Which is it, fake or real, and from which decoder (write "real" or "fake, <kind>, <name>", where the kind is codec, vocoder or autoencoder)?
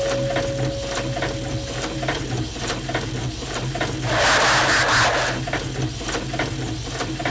real